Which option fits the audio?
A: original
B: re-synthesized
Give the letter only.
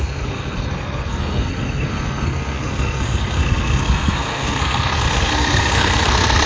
B